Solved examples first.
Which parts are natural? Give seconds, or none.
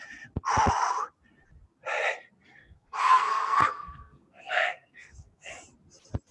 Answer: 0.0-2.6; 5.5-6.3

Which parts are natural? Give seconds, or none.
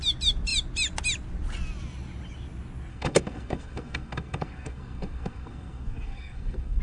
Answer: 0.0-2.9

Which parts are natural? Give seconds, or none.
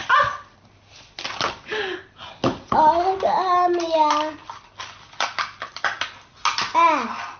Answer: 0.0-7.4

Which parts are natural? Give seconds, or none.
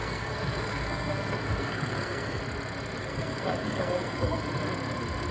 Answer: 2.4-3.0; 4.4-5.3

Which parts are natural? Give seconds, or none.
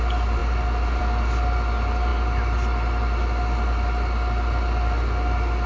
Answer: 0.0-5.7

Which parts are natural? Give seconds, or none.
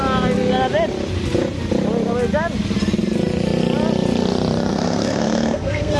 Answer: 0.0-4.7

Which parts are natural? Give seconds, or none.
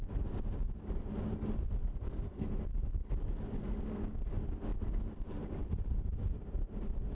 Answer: 0.0-1.9; 2.6-3.6; 4.2-7.1